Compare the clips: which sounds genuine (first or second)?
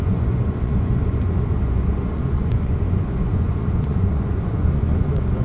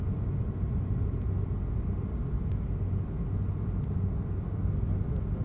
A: second